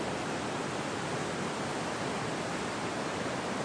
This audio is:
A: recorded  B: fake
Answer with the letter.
A